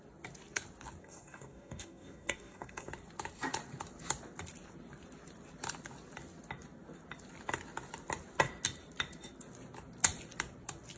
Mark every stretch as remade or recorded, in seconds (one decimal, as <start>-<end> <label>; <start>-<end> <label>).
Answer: 0.0-1.0 recorded; 1.0-2.9 remade; 2.9-11.0 recorded